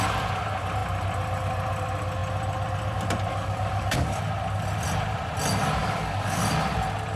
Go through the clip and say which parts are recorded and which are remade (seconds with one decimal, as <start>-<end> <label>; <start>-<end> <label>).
0.0-3.3 recorded; 3.3-4.2 remade; 4.2-5.8 recorded; 5.8-6.4 remade; 6.4-7.2 recorded